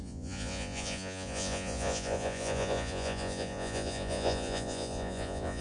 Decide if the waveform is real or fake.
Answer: fake